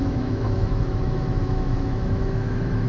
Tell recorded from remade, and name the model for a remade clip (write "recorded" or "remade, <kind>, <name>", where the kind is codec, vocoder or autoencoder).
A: remade, autoencoder, DAC-VAE